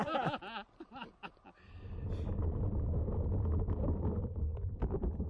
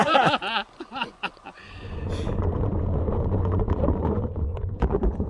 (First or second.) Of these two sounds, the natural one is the first